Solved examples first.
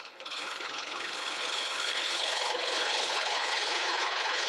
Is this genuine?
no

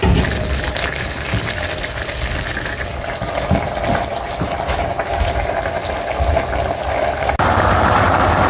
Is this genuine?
yes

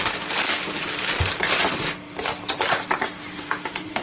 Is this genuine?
yes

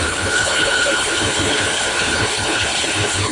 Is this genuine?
no